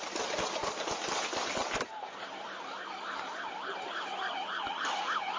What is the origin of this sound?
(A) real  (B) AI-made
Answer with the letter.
A